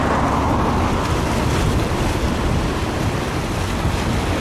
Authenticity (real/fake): real